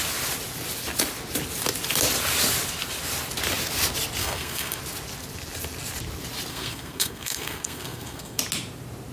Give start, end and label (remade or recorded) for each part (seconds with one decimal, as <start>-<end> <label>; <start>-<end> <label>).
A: 0.0-4.2 recorded; 4.2-4.8 remade; 4.8-6.5 recorded; 6.5-8.4 remade; 8.4-9.1 recorded